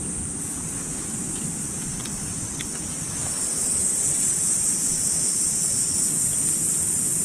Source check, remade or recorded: recorded